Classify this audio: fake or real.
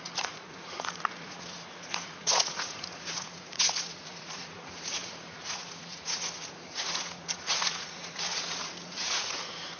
fake